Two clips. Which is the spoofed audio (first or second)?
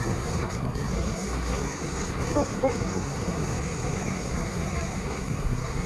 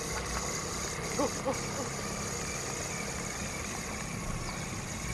first